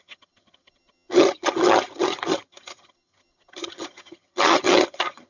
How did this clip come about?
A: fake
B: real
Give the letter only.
A